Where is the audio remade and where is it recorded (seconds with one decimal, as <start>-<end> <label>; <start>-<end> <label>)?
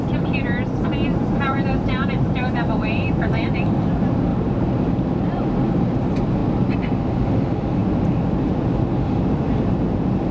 0.0-1.1 recorded; 1.1-3.6 remade; 3.6-4.3 recorded; 4.3-5.7 remade; 5.7-10.3 recorded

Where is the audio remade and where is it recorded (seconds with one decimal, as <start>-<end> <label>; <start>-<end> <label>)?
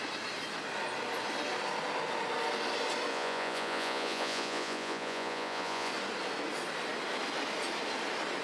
0.0-3.1 recorded; 3.1-5.9 remade; 5.9-8.4 recorded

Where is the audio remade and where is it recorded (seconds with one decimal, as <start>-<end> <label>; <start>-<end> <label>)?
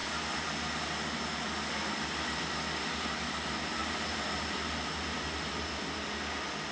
0.0-3.8 recorded; 3.8-4.8 remade; 4.8-6.7 recorded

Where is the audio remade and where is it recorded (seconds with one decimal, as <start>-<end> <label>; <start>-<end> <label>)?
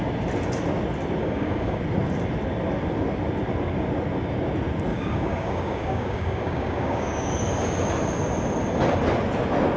0.0-1.2 recorded; 1.2-1.8 remade; 1.8-4.9 recorded; 4.9-7.3 remade; 7.3-9.8 recorded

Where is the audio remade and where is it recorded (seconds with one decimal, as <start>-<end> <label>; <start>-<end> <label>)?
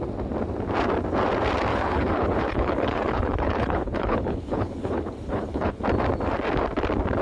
0.0-1.7 recorded; 1.7-5.8 remade; 5.8-7.2 recorded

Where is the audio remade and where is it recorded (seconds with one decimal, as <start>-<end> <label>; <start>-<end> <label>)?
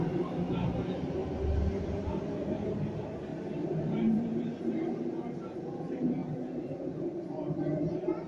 0.0-1.2 remade; 1.2-1.8 recorded; 1.8-8.3 remade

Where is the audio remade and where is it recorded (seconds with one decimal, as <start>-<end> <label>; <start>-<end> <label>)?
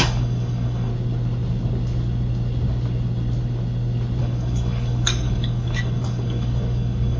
0.0-0.9 remade; 0.9-4.2 recorded; 4.2-7.2 remade